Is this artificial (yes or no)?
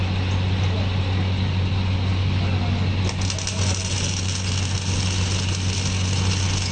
no